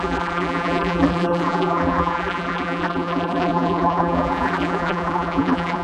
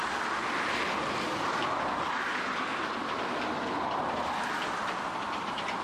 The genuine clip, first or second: second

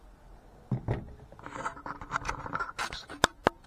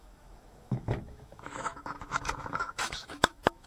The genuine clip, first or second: first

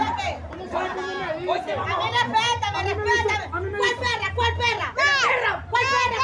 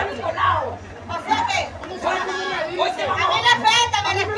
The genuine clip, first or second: first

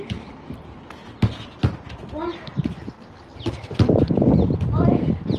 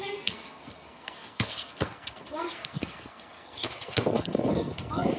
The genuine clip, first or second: first